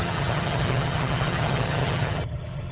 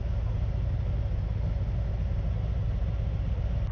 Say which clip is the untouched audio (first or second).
second